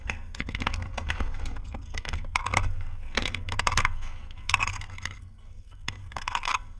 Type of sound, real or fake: fake